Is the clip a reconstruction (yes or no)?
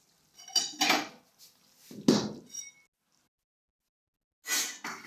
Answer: no